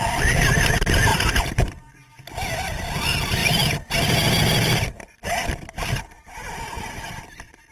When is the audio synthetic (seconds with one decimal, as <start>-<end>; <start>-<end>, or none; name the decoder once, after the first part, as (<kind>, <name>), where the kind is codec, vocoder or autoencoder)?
1.1-2.2 (vocoder, BigVGAN v2); 3.4-6.5